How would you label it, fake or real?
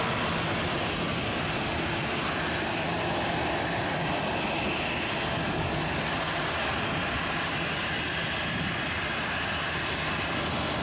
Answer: real